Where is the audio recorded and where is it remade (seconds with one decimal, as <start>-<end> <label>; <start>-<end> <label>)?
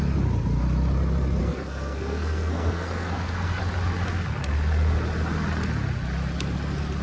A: 0.0-1.4 recorded; 1.4-3.6 remade; 3.6-7.0 recorded